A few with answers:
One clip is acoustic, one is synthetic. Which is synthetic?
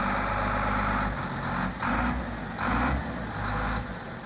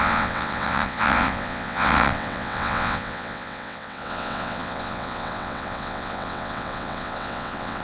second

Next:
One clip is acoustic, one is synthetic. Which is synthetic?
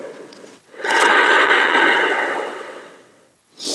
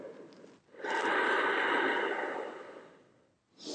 first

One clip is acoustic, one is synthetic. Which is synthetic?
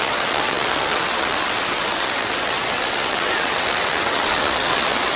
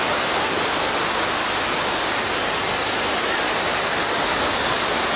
first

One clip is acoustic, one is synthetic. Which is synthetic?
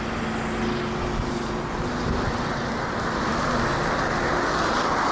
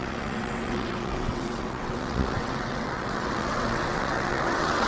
second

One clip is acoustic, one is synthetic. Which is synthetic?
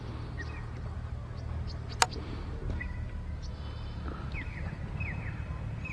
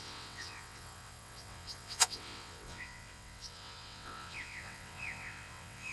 second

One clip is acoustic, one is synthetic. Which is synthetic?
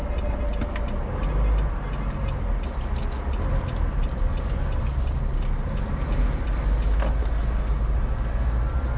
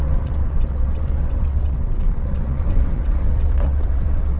second